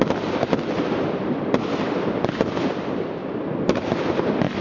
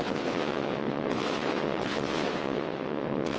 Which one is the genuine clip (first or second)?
first